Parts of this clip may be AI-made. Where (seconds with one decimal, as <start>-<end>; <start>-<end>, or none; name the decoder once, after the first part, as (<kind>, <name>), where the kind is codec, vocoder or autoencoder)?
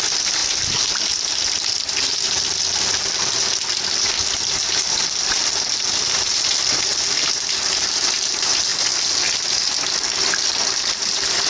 none